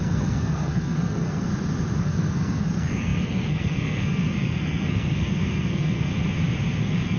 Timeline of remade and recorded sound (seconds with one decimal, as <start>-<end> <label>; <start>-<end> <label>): 0.0-1.5 remade; 1.5-2.0 recorded; 2.0-6.1 remade; 6.1-6.8 recorded; 6.8-7.2 remade